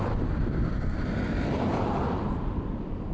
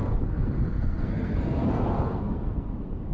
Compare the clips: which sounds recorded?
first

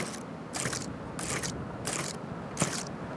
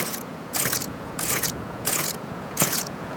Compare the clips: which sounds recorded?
first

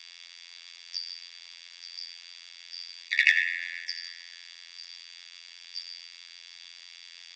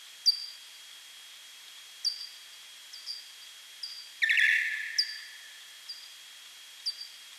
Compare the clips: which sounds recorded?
second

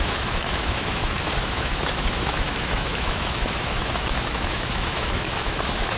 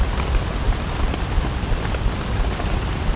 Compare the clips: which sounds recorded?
second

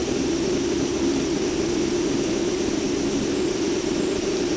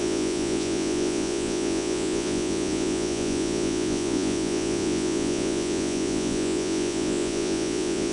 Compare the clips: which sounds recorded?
first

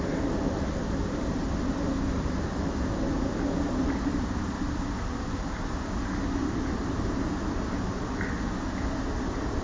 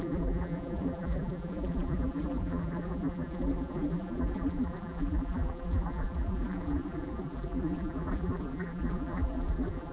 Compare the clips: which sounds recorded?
first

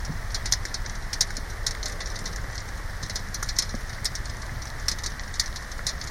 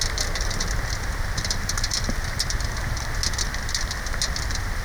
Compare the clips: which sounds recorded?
first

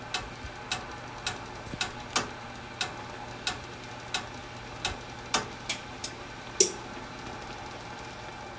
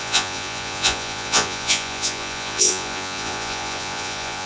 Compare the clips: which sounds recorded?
first